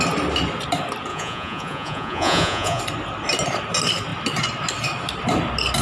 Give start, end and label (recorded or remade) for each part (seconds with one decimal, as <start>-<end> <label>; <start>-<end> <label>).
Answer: 0.0-1.1 recorded; 1.1-2.8 remade; 2.8-5.8 recorded